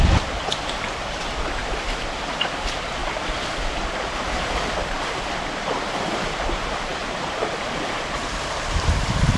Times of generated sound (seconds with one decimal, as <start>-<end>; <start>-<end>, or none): 0.0-9.4